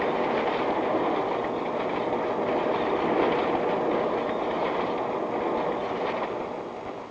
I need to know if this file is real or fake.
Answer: real